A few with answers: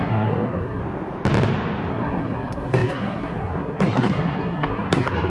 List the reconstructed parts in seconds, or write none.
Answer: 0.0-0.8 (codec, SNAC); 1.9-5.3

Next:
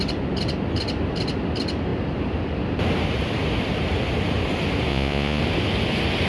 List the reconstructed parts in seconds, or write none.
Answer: 4.9-5.4 (vocoder, Vocos)

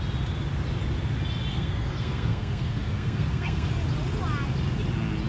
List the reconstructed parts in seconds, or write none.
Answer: 1.5-3.7 (codec, SNAC)

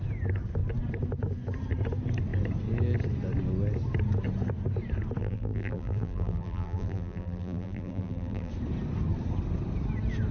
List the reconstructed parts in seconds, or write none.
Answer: 5.2-8.5 (vocoder, BigVGAN v2)

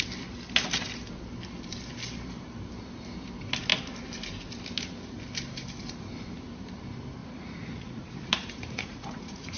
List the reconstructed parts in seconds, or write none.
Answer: 7.2-9.6 (vocoder, Vocos)

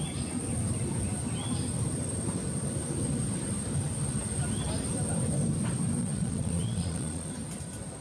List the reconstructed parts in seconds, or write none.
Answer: 6.0-7.3 (vocoder, Vocos)